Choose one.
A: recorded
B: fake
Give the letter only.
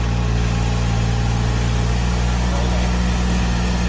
A